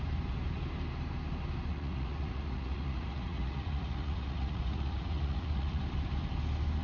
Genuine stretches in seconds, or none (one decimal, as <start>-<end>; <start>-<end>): 0.0-1.7; 5.8-6.8